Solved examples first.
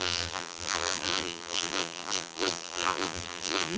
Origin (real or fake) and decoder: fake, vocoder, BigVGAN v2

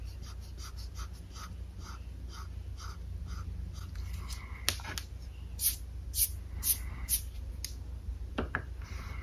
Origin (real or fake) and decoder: real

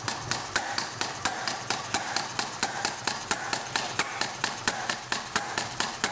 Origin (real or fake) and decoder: fake, vocoder, BigVGAN v2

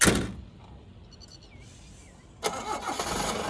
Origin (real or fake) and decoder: real